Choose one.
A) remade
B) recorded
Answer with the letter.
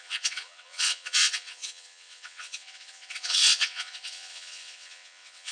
A